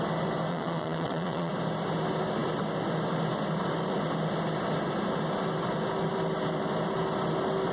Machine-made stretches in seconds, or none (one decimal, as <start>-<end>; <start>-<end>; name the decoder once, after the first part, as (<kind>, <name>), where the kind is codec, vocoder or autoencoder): 0.5-1.5 (vocoder, Vocos)